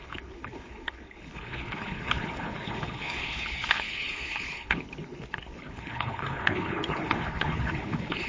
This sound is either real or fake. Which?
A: fake